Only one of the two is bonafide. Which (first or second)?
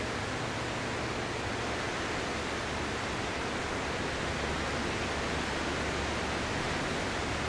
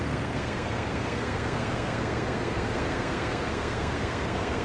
first